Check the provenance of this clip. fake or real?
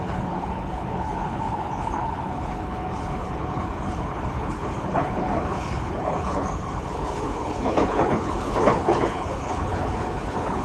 fake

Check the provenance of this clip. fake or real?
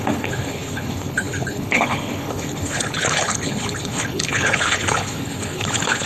fake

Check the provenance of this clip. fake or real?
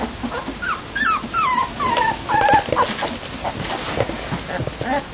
real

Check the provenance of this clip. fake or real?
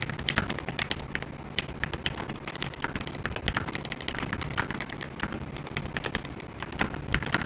real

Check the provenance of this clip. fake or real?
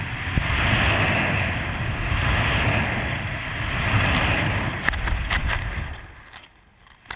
real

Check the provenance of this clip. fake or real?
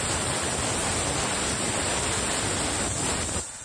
real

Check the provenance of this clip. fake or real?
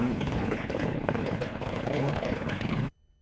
fake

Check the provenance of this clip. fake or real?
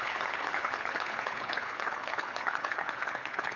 fake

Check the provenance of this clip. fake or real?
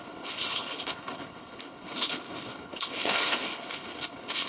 fake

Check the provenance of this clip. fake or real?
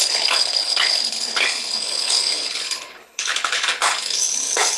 fake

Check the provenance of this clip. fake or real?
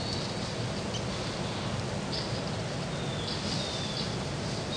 real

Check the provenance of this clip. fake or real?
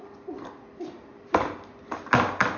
real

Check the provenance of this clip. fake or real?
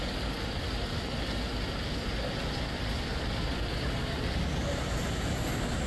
real